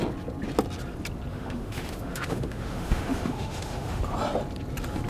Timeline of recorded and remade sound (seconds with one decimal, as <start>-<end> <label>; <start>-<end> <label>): 0.0-1.3 recorded; 1.3-4.0 remade; 4.0-5.1 recorded